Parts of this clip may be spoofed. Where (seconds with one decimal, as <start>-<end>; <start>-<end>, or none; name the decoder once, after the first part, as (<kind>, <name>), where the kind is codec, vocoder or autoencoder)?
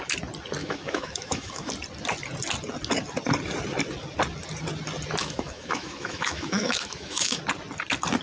0.6-1.7 (autoencoder, DAC-VAE); 5.2-7.4